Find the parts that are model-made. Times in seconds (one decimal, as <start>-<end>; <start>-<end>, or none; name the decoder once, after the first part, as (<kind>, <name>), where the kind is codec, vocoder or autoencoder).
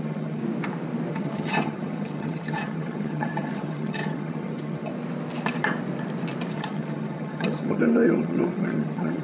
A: 0.0-0.4 (vocoder, HiFi-GAN); 1.1-4.9; 6.5-9.2